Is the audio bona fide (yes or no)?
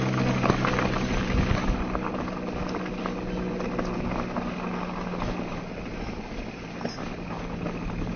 yes